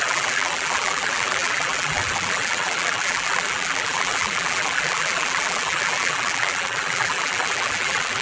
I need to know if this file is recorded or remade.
remade